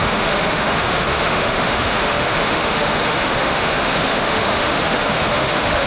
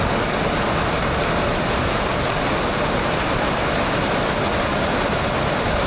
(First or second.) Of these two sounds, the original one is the second